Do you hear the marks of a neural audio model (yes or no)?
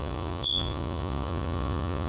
yes